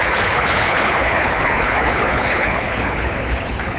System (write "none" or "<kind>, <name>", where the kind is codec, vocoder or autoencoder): codec, HILCodec